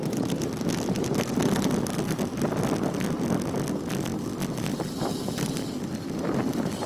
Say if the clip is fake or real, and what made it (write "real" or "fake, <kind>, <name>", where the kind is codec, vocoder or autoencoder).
real